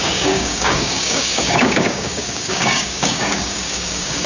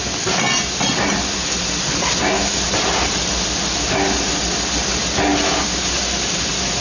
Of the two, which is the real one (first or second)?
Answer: second